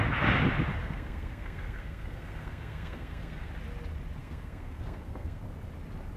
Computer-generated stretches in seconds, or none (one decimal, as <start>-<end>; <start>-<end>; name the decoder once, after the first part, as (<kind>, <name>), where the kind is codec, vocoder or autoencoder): 0.8-3.5 (codec, SNAC); 4.2-5.4

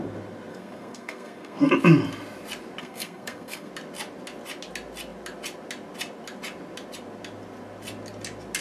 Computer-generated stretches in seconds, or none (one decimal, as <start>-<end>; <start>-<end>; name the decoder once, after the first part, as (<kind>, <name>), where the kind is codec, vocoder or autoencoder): 0.5-1.7 (codec, SNAC); 2.8-3.7

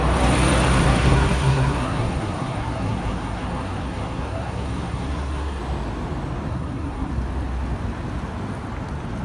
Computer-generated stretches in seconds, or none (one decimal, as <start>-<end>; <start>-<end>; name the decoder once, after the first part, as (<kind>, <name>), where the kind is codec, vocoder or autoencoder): 0.8-5.6 (codec, SNAC); 6.5-7.1

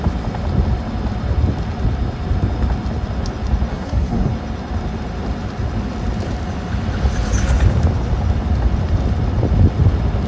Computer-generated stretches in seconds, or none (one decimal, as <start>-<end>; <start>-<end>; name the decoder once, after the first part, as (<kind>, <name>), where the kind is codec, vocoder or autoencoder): 3.7-4.3 (codec, SNAC)